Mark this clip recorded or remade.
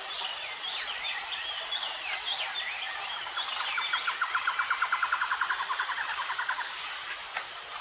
remade